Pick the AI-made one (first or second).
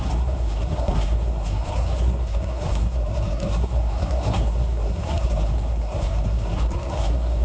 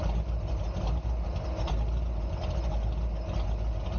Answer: first